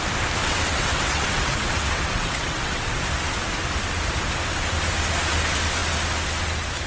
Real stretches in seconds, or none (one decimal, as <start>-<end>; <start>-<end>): 0.0-0.4; 3.0-6.9

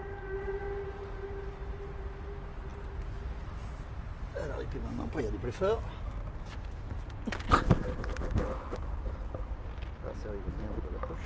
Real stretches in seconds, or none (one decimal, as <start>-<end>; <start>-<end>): 0.0-11.3

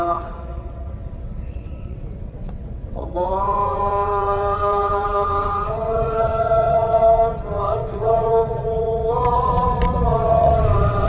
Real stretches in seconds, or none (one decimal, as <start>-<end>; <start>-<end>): none

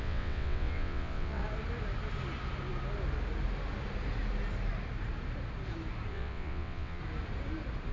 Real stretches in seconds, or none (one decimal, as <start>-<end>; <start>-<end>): 1.4-6.1; 7.0-7.9

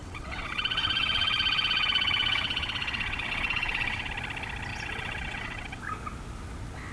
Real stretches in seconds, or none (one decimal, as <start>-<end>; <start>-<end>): 4.1-4.7; 5.8-6.9